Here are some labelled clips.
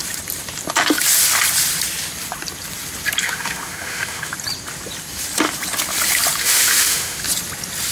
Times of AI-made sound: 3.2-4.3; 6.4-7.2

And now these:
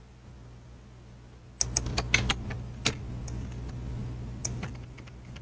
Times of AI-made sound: none

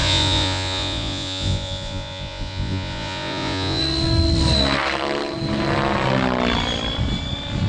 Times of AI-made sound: 0.0-3.8

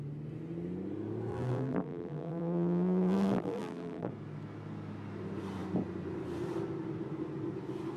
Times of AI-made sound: 1.3-4.1

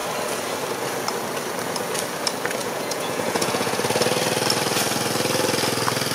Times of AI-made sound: 2.6-3.8